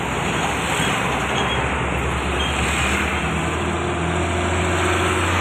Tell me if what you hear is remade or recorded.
recorded